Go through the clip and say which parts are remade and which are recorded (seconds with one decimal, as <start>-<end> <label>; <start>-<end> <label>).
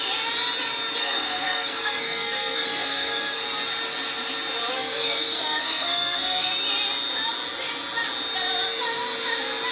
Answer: 0.0-1.0 recorded; 1.0-3.4 remade; 3.4-4.7 recorded; 4.7-6.5 remade; 6.5-9.7 recorded